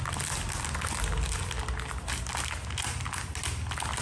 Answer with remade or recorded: recorded